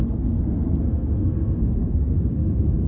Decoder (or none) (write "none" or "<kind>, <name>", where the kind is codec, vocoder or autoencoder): codec, SNAC